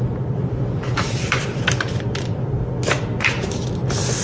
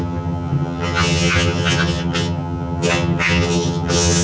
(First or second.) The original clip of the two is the first